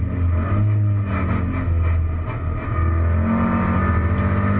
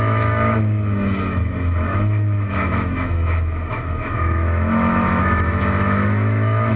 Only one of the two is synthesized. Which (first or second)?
second